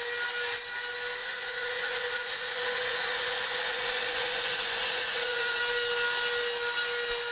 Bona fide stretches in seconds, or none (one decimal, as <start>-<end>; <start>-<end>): 0.0-1.2; 5.6-7.3